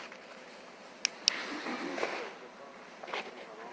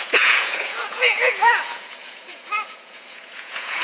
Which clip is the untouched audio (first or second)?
first